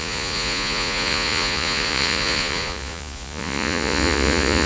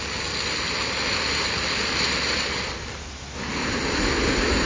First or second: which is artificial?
first